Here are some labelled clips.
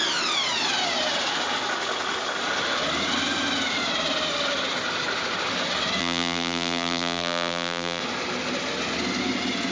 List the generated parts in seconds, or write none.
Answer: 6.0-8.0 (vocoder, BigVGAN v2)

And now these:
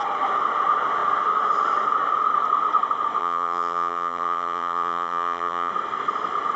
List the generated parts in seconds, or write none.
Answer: 3.2-5.7 (vocoder, BigVGAN v2)

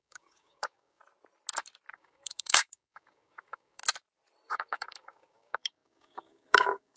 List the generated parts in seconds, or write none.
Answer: 0.0-1.0 (codec, DAC); 1.9-3.8; 4.5-7.0

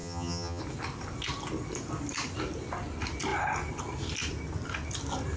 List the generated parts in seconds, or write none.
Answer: 0.0-0.6 (vocoder, HiFi-GAN)

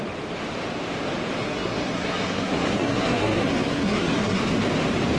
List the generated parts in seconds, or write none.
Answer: 1.4-4.4 (codec, SNAC)

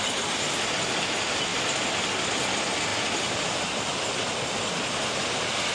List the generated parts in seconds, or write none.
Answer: none

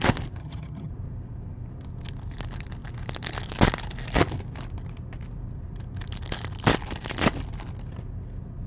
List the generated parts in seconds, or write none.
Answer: 0.4-0.9 (vocoder, HiFi-GAN)